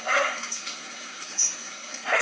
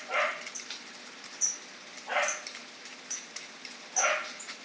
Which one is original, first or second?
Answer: second